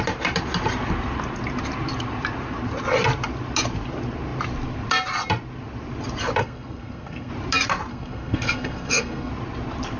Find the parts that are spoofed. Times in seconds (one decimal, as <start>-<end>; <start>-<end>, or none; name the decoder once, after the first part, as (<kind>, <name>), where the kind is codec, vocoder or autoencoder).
6.4-7.3 (codec, SNAC); 7.9-9.3